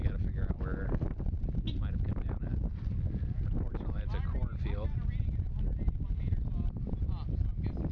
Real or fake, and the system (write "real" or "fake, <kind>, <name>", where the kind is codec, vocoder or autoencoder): real